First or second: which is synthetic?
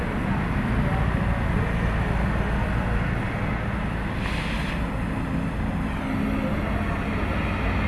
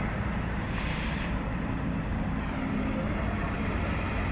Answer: second